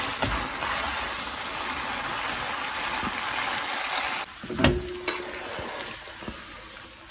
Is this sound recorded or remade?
recorded